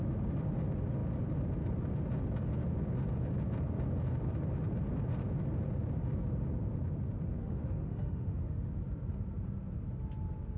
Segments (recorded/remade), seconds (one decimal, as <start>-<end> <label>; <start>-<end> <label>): 0.0-7.4 recorded; 7.4-8.7 remade; 8.7-10.6 recorded